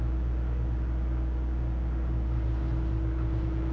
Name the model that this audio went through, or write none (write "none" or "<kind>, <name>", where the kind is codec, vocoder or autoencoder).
none